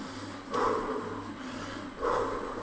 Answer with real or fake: real